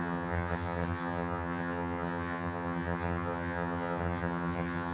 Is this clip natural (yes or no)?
no